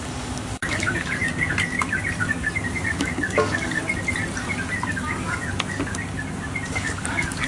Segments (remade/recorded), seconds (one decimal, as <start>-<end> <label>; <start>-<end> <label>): 0.0-1.2 remade; 1.2-2.9 recorded; 2.9-3.8 remade; 3.8-4.9 recorded; 4.9-5.4 remade; 5.4-6.7 recorded; 6.7-7.5 remade